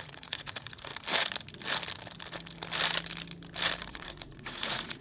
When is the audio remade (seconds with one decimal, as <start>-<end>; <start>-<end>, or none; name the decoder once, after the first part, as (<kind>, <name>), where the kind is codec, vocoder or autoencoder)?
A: 0.0-0.9 (vocoder, Vocos); 3.9-5.0